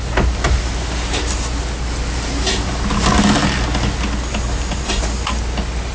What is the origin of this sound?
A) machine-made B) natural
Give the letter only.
B